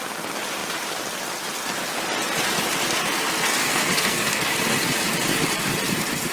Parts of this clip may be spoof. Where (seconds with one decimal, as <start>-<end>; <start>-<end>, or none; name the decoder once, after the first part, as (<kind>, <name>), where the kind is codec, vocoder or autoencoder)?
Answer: 3.6-4.5 (codec, SNAC)